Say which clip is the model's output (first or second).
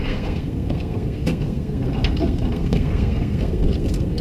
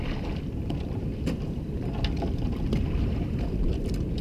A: first